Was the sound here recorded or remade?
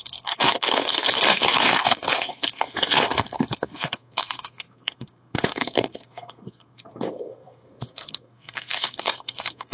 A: remade